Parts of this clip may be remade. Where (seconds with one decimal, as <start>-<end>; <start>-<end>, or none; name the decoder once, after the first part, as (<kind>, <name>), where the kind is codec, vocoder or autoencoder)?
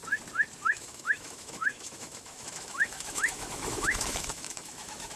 0.6-5.2 (autoencoder, DAC-VAE)